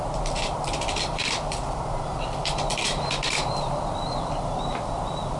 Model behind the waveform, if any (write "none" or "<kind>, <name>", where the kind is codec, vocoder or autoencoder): vocoder, BigVGAN v2